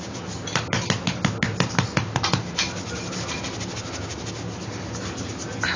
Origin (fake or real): real